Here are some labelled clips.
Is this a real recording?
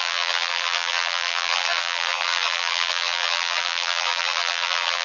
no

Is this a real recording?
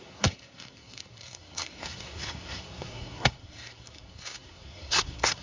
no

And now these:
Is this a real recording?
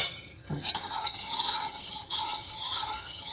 no